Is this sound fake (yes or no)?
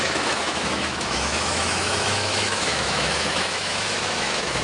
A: yes